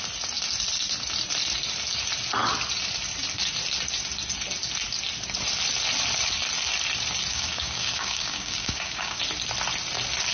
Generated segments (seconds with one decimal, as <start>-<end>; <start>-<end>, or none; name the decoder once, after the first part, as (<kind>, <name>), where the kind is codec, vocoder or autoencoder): 7.3-9.2 (codec, DAC)

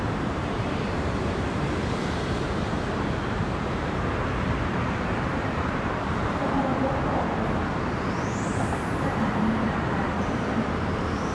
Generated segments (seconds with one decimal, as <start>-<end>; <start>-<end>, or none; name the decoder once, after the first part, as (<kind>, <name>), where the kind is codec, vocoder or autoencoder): 0.0-6.7 (vocoder, BigVGAN v2); 9.1-11.3

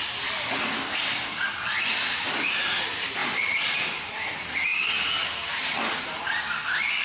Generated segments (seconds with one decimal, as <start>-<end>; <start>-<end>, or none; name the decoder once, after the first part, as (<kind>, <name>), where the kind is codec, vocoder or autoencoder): 3.2-3.7 (vocoder, BigVGAN v2)

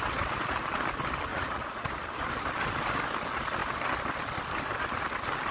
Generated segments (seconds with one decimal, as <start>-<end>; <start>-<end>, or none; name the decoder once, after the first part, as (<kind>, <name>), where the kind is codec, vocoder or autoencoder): 1.3-1.9 (vocoder, Vocos)

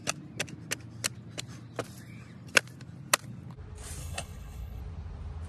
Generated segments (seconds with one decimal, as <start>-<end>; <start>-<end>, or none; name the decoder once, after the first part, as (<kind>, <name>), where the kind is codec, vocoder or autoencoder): 4.0-4.8 (codec, HILCodec)